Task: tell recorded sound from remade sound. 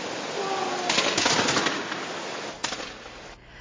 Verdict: recorded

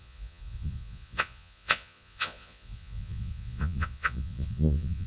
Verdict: remade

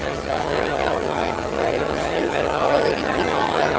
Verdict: remade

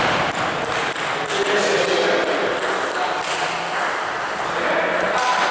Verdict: recorded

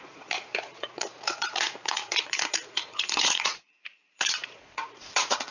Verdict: remade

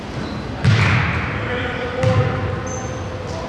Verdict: recorded